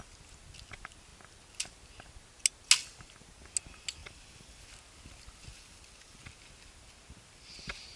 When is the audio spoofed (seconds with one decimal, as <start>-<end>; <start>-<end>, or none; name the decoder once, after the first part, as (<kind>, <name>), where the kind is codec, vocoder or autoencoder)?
4.0-4.6 (vocoder, BigVGAN v2); 5.5-6.3